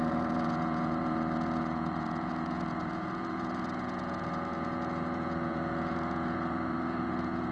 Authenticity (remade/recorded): remade